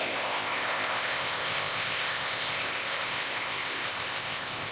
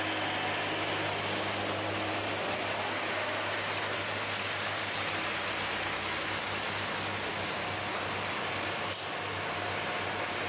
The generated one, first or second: first